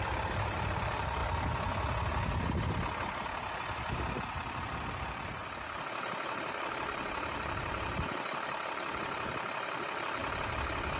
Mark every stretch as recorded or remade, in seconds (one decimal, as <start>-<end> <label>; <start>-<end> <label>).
0.0-1.2 remade; 1.2-4.9 recorded; 4.9-5.4 remade; 5.4-6.0 recorded; 6.0-10.2 remade; 10.2-11.0 recorded

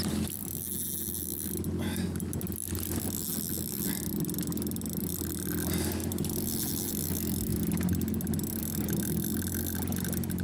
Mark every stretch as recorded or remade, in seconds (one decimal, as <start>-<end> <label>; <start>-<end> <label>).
0.0-10.4 recorded

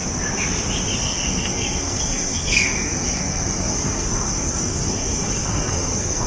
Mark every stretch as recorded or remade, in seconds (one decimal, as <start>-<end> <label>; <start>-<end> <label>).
0.0-1.0 recorded; 1.0-6.3 remade

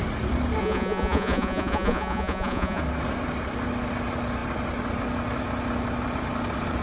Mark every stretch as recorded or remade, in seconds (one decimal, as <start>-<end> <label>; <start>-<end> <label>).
0.0-0.6 recorded; 0.6-2.8 remade; 2.8-6.8 recorded

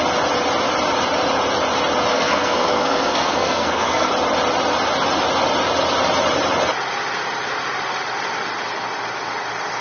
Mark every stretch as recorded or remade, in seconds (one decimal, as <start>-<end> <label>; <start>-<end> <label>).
0.0-2.1 recorded; 2.1-4.1 remade; 4.1-9.8 recorded